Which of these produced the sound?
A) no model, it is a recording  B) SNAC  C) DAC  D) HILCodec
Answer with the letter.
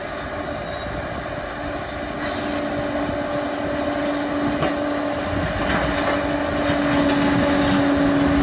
A